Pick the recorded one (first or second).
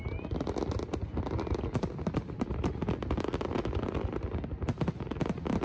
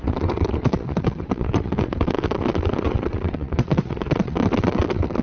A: first